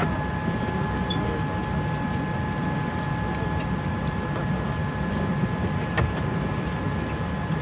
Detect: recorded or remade recorded